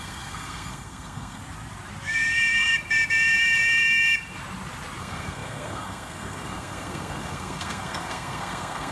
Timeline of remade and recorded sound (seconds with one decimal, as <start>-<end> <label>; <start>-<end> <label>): 0.0-1.4 remade; 1.4-5.0 recorded; 5.0-8.9 remade